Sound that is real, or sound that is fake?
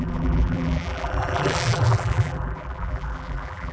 fake